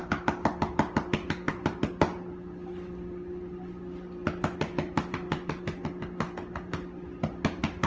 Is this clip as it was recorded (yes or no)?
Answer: yes